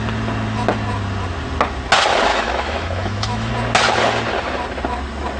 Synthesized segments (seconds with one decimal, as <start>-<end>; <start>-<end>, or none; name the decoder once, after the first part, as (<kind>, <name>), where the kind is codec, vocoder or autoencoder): 2.3-3.5 (autoencoder, DAC-VAE)